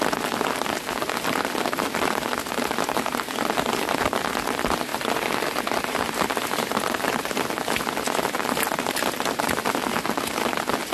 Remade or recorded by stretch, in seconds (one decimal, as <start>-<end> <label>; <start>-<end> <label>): 0.0-10.9 recorded